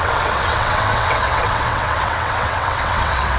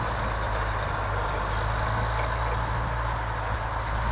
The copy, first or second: first